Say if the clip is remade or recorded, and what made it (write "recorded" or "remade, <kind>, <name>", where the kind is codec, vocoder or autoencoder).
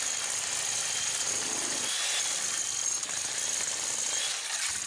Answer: recorded